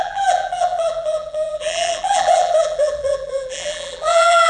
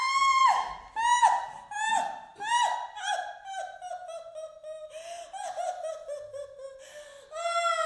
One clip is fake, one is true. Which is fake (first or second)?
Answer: first